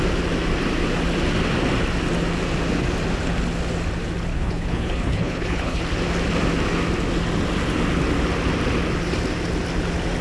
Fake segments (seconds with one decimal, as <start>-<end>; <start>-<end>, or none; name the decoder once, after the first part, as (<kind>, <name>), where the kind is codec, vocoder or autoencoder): 4.3-5.8 (codec, HILCodec)